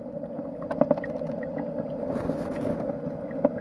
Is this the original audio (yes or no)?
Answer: yes